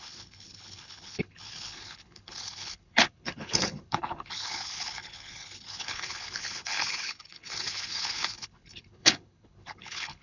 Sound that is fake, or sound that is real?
fake